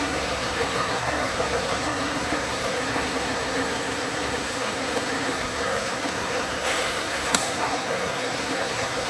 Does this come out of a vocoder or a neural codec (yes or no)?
yes